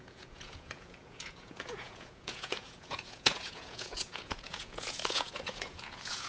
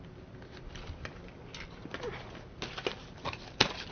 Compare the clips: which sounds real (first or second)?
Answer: second